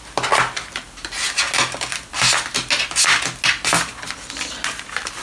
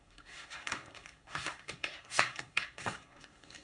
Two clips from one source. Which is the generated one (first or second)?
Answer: second